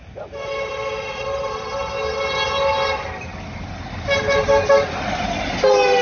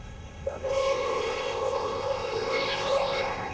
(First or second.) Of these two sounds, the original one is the first